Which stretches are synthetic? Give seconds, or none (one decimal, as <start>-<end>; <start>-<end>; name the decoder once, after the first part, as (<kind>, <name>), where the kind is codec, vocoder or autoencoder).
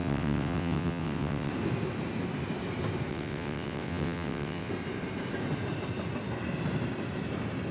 0.0-1.5 (vocoder, WaveNeXt); 3.1-4.7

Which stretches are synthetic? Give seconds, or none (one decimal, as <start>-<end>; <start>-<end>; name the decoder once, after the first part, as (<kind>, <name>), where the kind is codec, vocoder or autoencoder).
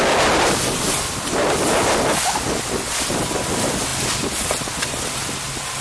none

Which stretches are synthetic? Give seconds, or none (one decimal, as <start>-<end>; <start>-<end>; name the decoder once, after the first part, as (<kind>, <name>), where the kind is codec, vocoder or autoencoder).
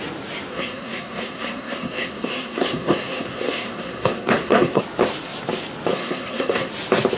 0.5-4.8 (codec, SNAC); 5.9-6.7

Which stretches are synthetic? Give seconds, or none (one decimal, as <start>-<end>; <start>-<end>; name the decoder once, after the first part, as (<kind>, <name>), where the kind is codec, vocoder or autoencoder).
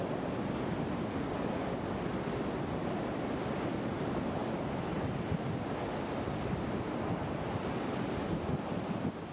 none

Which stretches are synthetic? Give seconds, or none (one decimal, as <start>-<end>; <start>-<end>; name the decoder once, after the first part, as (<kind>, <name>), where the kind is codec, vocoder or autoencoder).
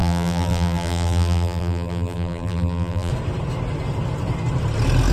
0.0-3.1 (vocoder, BigVGAN v2)